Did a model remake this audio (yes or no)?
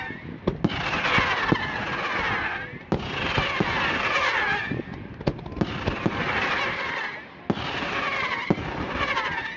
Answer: no